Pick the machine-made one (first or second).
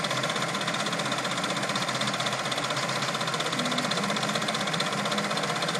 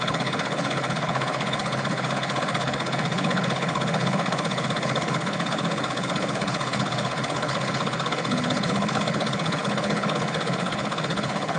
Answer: second